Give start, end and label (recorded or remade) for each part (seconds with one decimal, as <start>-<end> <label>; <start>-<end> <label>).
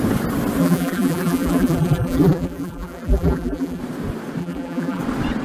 0.0-0.6 recorded; 0.6-3.8 remade; 3.8-4.4 recorded; 4.4-5.0 remade; 5.0-5.4 recorded